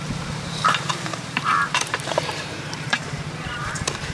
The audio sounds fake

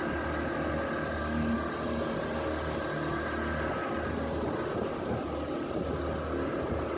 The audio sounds real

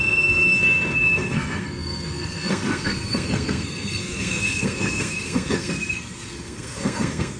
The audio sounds fake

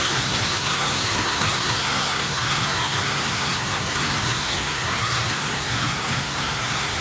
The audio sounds fake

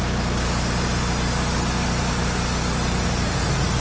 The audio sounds real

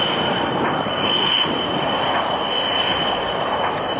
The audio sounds real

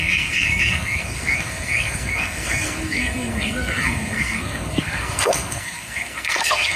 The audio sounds fake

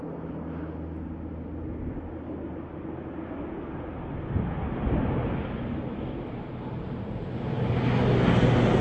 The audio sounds real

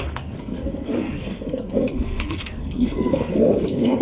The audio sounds fake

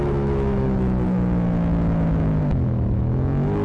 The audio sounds fake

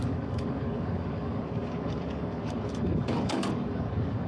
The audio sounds fake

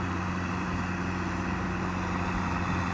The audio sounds real